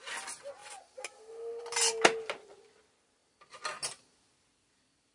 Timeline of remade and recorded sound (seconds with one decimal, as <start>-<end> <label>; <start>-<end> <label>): 0.0-5.1 recorded